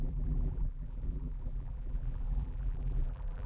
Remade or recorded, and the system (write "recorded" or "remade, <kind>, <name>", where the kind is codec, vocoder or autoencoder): remade, vocoder, BigVGAN v2